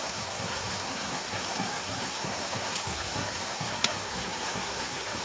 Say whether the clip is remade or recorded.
remade